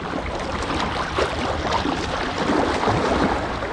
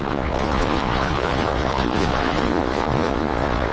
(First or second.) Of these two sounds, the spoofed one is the second